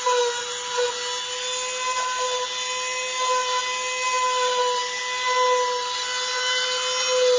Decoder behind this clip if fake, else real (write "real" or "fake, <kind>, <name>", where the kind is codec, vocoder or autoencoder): real